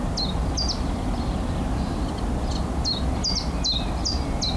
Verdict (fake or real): real